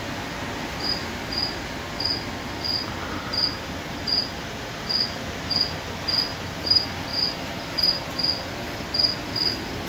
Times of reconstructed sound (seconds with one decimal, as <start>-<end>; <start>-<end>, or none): 7.1-8.0